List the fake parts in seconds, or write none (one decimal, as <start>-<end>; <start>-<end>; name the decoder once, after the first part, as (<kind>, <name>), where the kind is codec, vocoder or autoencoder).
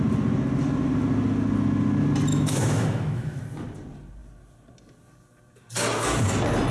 2.3-3.4 (autoencoder, DAC-VAE)